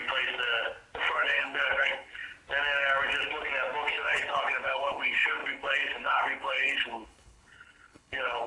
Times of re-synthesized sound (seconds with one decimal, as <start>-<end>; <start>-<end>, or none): 1.1-2.2; 3.9-8.5

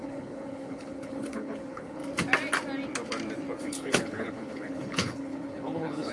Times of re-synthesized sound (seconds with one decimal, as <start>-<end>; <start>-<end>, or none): 0.0-2.0; 3.6-6.1

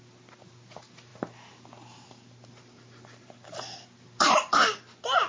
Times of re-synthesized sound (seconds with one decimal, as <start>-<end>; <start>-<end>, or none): none